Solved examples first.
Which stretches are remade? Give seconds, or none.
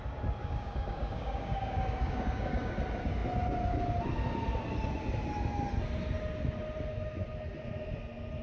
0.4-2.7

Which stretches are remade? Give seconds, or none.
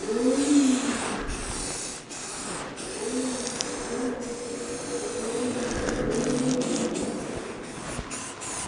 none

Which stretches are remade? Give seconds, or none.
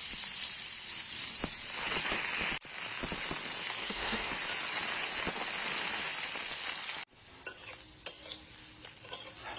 3.8-4.3